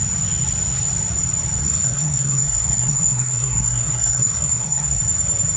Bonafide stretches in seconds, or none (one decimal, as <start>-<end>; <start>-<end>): 0.0-1.6; 5.0-5.6